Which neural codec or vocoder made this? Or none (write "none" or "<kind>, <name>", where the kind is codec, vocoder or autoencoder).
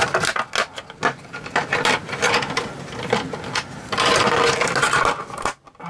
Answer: none